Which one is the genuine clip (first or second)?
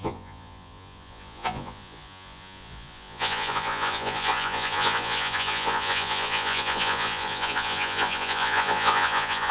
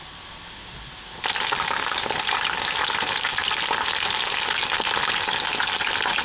second